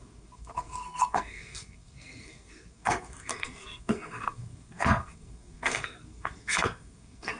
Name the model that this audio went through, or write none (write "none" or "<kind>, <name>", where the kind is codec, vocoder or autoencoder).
codec, SNAC